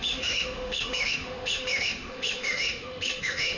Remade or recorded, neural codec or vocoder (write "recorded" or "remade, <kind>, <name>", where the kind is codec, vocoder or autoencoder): remade, autoencoder, DAC-VAE